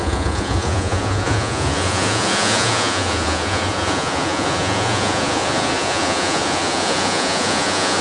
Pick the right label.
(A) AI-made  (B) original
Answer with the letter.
A